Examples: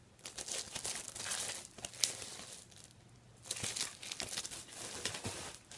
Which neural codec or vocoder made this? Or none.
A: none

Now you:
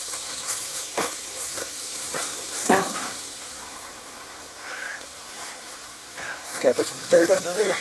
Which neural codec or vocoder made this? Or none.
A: codec, SNAC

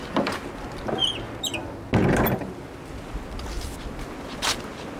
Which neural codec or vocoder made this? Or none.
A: none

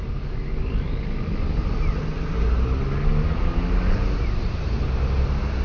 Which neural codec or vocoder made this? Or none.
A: none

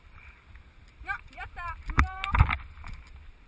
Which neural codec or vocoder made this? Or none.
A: none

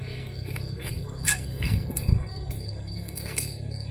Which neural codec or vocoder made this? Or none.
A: codec, SNAC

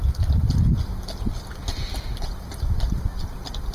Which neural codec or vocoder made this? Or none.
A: none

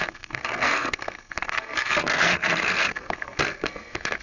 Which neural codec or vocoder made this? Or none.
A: codec, SNAC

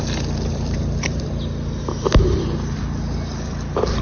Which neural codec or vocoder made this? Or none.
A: vocoder, BigVGAN v2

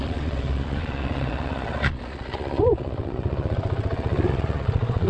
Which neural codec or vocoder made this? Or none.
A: vocoder, Vocos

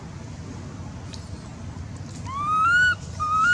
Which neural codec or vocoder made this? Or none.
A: none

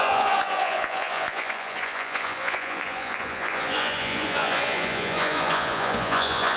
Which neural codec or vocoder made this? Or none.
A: vocoder, Vocos